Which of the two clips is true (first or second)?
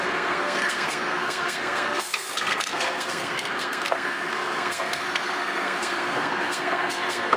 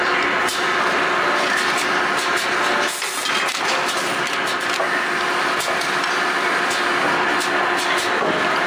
second